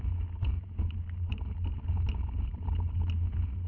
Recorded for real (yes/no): yes